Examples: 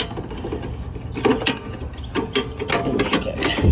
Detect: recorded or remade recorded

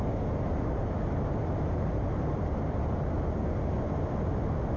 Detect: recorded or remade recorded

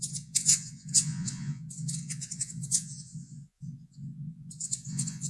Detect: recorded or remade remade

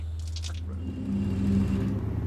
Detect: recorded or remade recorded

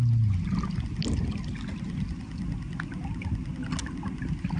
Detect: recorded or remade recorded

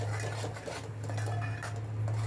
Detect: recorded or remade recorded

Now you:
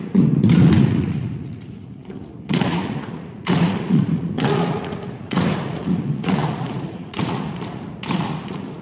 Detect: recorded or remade remade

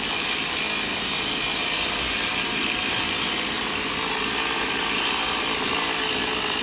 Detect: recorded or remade recorded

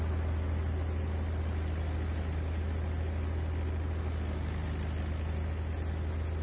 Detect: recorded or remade recorded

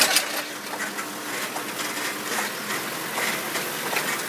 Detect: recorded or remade recorded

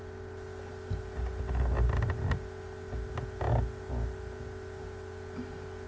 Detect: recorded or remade recorded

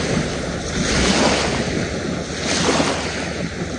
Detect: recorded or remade recorded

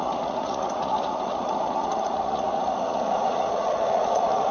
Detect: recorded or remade remade